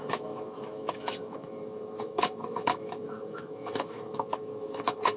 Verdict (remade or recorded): remade